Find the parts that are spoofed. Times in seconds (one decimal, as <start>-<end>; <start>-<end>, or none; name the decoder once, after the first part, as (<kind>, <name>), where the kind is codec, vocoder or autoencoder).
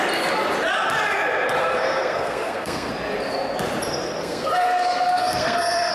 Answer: 1.6-2.9 (codec, SNAC); 4.2-5.9